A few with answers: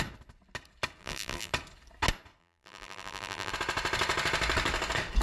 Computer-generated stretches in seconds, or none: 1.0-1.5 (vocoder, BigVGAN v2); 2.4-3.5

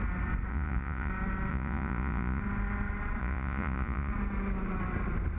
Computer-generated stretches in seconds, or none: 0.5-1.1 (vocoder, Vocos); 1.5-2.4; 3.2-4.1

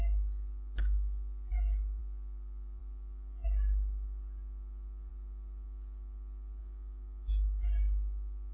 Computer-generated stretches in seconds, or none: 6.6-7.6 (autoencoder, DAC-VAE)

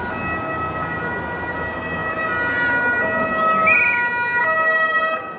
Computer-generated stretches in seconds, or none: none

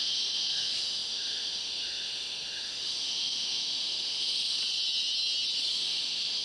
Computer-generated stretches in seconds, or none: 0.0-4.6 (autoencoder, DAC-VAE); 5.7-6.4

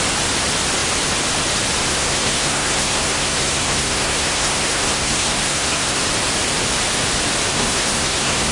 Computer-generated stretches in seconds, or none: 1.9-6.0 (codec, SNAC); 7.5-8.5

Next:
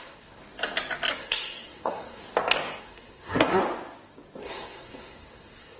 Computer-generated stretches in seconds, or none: 0.0-0.4 (codec, SNAC); 1.1-2.2; 2.8-3.6; 4.4-5.8